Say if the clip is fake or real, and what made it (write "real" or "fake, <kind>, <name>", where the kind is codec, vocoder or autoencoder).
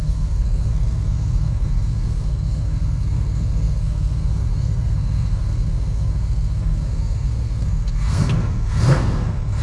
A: fake, codec, SNAC